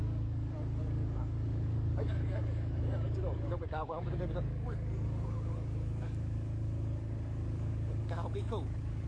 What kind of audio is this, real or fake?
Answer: fake